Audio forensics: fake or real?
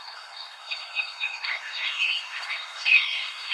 fake